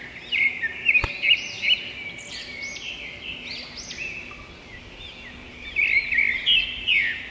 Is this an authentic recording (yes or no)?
yes